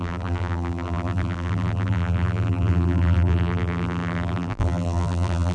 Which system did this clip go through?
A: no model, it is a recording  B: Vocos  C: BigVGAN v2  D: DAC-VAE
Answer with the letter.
C